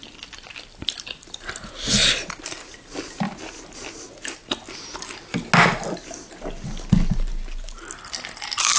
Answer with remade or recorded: recorded